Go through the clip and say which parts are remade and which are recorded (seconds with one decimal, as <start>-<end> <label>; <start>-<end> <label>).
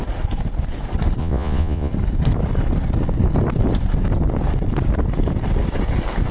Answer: 0.0-1.2 recorded; 1.2-1.9 remade; 1.9-6.3 recorded